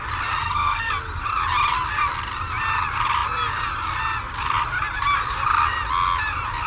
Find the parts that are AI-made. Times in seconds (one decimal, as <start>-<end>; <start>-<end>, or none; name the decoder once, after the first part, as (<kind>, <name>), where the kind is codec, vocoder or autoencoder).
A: 0.4-0.9 (codec, SNAC)